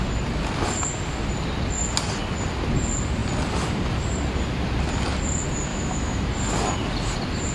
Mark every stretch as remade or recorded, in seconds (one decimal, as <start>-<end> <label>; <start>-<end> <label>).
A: 0.0-5.7 recorded; 5.7-6.3 remade; 6.3-7.5 recorded